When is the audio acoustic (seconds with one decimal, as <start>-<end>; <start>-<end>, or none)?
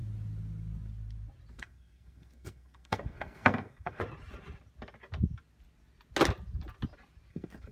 0.0-1.5; 4.0-7.3